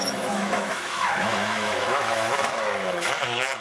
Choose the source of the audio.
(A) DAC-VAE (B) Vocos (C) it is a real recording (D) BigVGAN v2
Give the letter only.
A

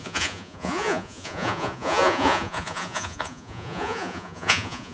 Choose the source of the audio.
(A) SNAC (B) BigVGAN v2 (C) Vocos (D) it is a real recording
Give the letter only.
C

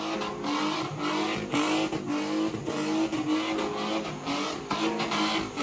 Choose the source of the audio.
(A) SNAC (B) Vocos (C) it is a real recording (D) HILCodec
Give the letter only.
C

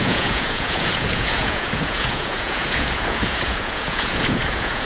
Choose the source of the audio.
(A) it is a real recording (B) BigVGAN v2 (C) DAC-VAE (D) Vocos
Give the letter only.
D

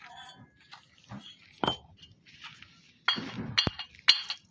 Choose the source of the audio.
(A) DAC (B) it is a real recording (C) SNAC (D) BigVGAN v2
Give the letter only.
B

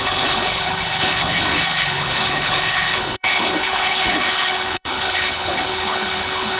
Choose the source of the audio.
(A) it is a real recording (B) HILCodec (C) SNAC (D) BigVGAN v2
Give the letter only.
B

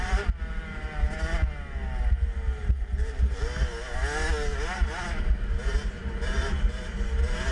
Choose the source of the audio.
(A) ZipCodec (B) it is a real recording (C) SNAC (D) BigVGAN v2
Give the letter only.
B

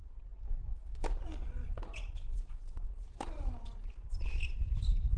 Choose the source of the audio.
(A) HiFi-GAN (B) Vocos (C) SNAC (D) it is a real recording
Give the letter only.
D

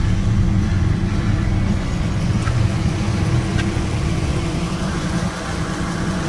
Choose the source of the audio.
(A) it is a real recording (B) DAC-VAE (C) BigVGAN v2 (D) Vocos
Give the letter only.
D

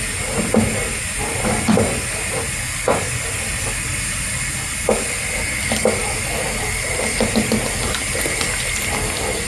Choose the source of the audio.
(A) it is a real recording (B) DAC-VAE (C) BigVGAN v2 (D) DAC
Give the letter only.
A